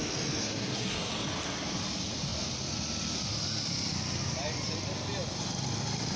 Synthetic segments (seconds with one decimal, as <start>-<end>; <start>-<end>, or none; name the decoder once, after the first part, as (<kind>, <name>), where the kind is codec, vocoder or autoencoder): 0.4-1.1 (codec, SNAC)